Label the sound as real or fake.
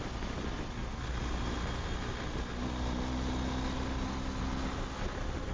real